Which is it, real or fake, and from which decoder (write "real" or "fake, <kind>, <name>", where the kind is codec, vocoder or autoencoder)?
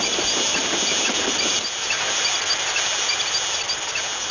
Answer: real